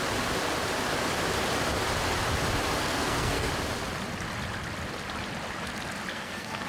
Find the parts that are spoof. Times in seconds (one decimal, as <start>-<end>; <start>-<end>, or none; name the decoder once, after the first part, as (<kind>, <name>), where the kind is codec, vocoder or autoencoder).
2.8-3.5 (codec, SNAC); 6.1-6.7

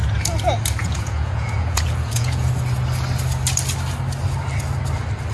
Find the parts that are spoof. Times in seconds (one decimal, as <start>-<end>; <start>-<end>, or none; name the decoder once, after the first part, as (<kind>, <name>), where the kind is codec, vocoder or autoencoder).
0.8-2.5 (vocoder, Vocos)

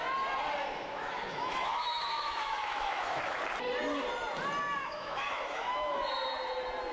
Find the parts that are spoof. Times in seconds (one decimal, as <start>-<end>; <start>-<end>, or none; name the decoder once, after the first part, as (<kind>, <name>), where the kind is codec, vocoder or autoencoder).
0.6-3.4 (autoencoder, DAC-VAE); 4.8-6.1

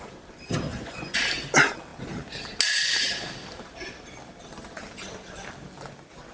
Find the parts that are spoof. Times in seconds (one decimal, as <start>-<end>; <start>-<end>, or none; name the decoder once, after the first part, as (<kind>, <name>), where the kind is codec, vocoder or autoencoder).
0.7-1.2 (vocoder, Vocos)